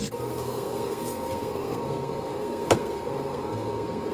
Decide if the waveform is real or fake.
fake